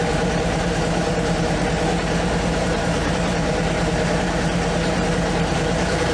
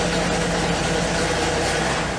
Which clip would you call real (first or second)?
second